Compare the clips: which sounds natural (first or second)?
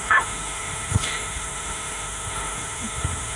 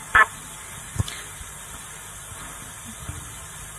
second